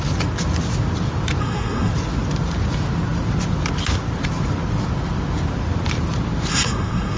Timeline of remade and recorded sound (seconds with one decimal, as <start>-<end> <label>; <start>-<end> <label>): 0.0-1.4 recorded; 1.4-1.9 remade; 1.9-6.5 recorded; 6.5-7.2 remade